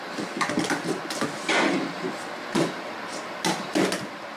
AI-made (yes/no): no